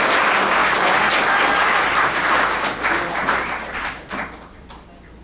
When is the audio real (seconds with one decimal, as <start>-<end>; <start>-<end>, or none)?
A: 0.6-1.8